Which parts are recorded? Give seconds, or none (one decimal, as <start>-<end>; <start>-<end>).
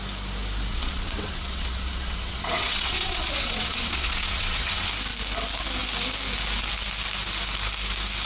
0.0-0.7; 4.9-8.3